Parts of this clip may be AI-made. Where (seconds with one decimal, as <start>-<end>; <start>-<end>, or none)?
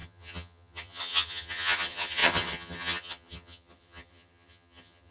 0.0-5.1